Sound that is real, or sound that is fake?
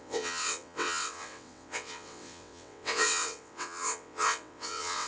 fake